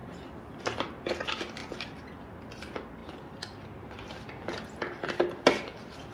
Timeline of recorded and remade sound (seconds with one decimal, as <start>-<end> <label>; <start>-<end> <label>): 0.0-6.1 recorded